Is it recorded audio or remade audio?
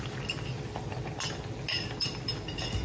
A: recorded